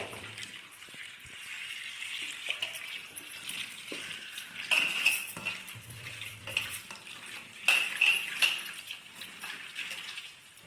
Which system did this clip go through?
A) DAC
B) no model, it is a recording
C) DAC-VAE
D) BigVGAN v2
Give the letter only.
D